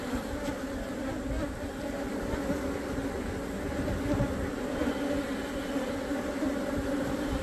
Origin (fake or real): real